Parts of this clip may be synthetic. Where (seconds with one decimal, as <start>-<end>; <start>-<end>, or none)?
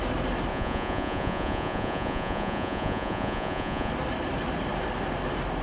0.5-3.9